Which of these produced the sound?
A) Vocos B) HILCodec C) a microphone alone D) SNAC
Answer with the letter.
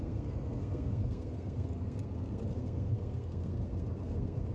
D